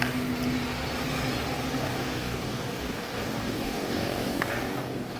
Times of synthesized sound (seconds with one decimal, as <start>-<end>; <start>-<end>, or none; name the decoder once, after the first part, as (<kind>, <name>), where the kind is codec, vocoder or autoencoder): 1.8-5.2 (codec, DAC)